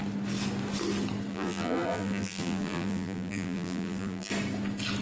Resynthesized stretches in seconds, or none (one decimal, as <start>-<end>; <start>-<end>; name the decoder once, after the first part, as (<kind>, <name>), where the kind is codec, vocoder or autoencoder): 1.3-4.3 (vocoder, BigVGAN v2)